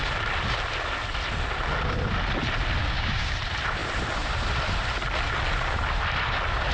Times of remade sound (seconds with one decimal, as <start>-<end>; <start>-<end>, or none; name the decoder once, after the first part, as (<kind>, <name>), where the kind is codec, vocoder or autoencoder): 2.8-3.3 (codec, DAC)